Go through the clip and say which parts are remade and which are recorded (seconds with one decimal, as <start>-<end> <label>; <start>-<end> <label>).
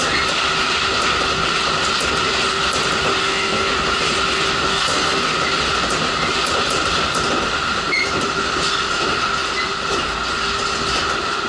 0.0-3.2 recorded; 3.2-3.7 remade; 3.7-4.7 recorded; 4.7-5.2 remade; 5.2-11.5 recorded